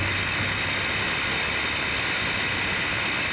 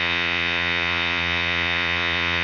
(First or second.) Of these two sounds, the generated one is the second